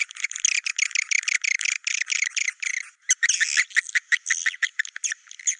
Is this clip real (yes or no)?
yes